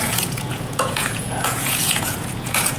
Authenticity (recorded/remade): remade